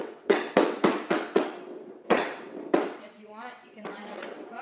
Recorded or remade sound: remade